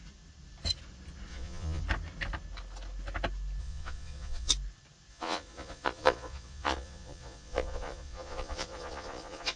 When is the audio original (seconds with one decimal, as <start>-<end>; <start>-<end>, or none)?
0.0-1.3; 1.8-3.6; 4.5-5.1